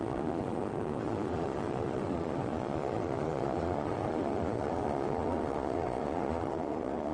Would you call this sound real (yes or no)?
no